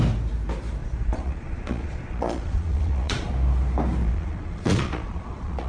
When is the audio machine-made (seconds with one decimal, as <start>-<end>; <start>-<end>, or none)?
0.8-3.3; 4.0-5.7